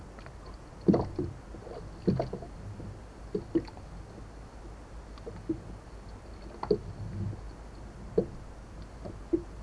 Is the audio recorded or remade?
recorded